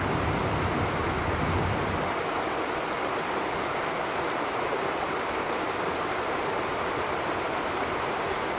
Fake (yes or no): no